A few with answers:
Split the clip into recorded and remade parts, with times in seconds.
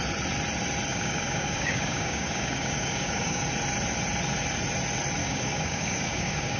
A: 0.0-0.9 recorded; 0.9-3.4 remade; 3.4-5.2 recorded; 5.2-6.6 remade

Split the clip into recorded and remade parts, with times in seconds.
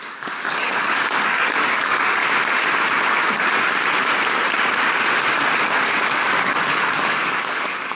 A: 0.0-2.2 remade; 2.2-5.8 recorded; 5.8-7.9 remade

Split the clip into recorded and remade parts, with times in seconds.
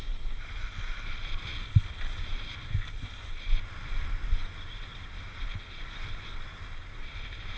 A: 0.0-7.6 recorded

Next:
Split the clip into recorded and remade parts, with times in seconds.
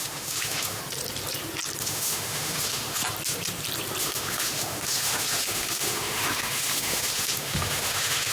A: 0.0-0.8 remade; 0.8-1.8 recorded; 1.8-3.0 remade; 3.0-4.0 recorded; 4.0-8.3 remade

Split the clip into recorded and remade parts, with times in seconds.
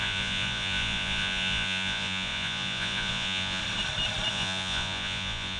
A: 0.0-3.6 remade; 3.6-4.3 recorded; 4.3-5.6 remade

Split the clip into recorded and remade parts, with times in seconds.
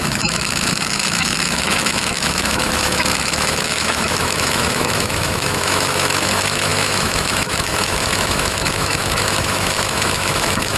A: 0.0-10.8 remade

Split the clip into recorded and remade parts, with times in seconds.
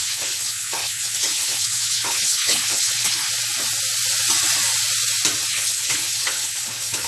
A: 0.0-3.3 remade; 3.3-5.5 recorded; 5.5-7.1 remade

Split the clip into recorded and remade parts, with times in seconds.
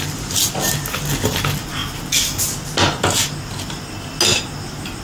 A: 0.0-5.0 recorded